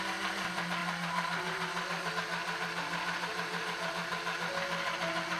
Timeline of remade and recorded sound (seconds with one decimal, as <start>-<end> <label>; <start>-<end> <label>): 0.0-0.8 recorded; 0.8-2.1 remade; 2.1-3.3 recorded; 3.3-3.9 remade; 3.9-5.4 recorded